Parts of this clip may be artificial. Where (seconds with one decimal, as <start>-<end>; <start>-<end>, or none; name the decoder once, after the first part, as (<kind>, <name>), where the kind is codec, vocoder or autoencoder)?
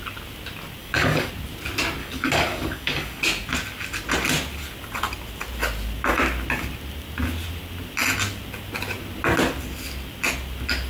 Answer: 0.8-1.3 (codec, DAC); 2.0-3.2